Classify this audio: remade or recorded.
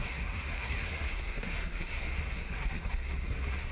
remade